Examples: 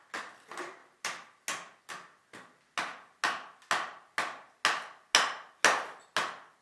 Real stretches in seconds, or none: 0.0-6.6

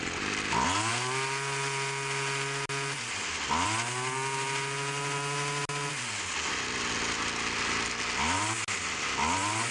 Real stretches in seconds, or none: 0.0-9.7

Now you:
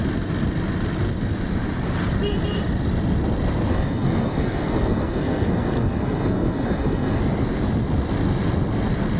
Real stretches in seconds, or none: 0.0-3.7; 7.2-9.2

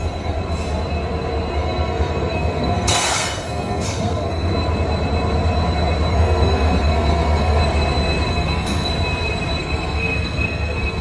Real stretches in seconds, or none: 0.4-1.5; 4.5-6.1; 7.6-8.3; 8.9-9.6